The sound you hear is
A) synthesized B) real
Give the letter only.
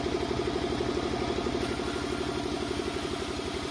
B